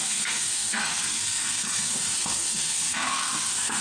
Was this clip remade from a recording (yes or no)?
yes